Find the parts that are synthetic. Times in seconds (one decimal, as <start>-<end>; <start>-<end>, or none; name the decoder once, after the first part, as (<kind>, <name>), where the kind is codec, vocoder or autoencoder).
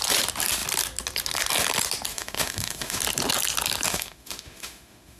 2.1-3.0 (autoencoder, DAC-VAE); 3.9-5.2